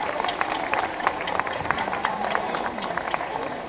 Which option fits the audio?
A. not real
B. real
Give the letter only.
A